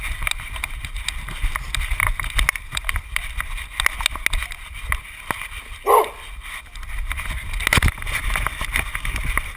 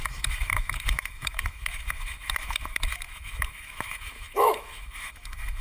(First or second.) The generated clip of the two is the second